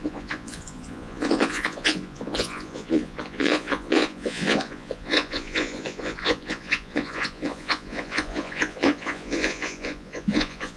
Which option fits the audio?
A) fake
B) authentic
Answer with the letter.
A